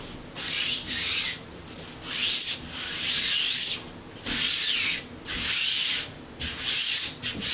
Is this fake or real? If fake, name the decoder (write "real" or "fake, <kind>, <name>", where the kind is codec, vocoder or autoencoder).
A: real